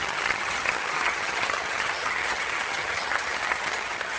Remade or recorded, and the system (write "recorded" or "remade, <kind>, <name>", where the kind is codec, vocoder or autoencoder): remade, vocoder, HiFi-GAN